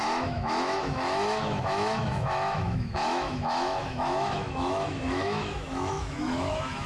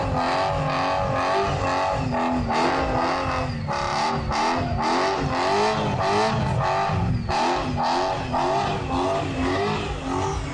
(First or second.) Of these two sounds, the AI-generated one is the first